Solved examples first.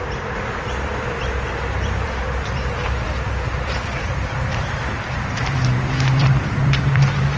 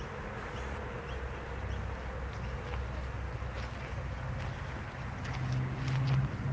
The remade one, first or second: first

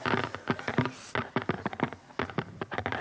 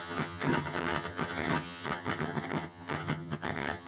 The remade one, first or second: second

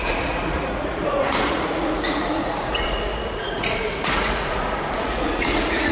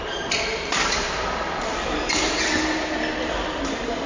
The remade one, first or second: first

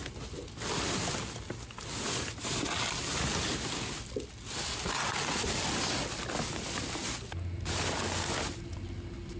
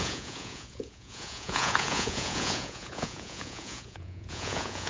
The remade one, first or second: second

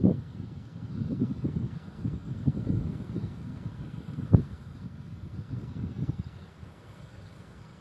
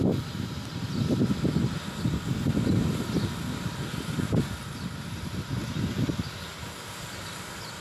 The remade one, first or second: first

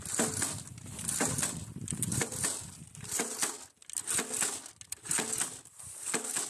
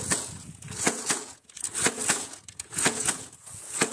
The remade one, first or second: second